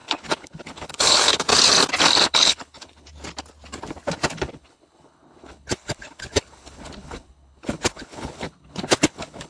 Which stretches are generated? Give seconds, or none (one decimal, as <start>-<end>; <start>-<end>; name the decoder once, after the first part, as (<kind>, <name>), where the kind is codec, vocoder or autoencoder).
0.0-1.5 (codec, HILCodec); 2.2-3.1; 4.3-9.5

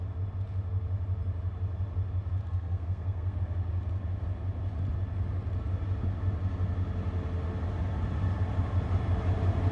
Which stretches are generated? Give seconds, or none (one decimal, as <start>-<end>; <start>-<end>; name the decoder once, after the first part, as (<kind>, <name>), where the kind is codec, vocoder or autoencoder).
2.4-3.4 (codec, SNAC)

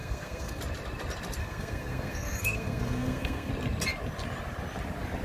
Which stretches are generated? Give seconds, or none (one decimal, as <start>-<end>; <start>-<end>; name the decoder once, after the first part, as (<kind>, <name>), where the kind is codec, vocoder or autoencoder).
0.0-0.6 (codec, SNAC); 1.4-3.5